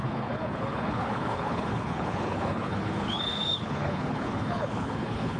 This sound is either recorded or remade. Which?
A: remade